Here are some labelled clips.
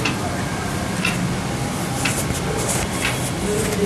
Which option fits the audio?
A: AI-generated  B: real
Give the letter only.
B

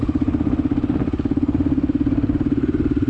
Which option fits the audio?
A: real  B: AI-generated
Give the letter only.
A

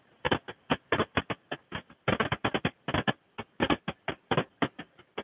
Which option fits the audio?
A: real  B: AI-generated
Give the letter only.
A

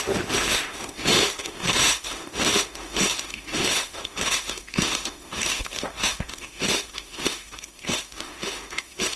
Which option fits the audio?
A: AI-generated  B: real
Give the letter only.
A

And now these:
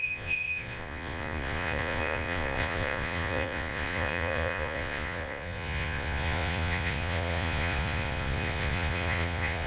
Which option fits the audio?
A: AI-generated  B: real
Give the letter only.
A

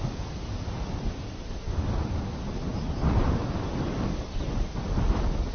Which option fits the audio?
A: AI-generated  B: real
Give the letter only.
B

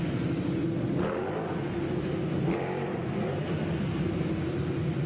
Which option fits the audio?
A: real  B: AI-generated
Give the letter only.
A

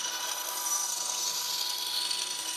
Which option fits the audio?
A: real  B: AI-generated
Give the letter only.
B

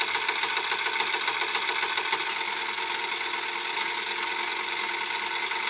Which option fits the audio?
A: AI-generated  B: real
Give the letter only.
B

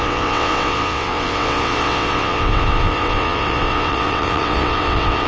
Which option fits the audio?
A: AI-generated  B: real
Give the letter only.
A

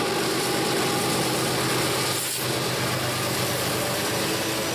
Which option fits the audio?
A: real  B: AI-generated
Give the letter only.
A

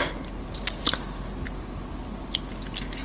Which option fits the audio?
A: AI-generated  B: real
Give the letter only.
B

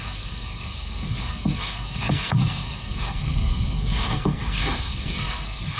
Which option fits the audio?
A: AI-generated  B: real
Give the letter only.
A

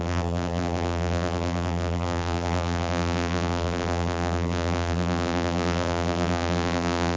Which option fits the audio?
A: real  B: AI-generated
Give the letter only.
B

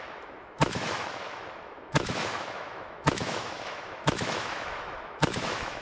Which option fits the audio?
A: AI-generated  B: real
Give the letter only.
A